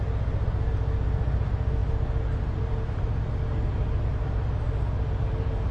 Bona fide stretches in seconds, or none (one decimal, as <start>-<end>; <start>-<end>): 0.0-5.7